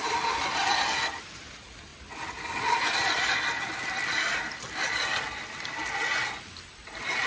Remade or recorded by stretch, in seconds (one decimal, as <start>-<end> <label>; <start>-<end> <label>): 0.0-7.3 recorded